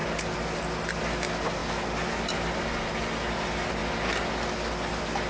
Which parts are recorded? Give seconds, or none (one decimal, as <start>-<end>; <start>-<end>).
0.0-5.3